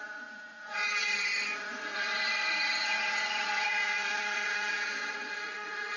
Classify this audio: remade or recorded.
remade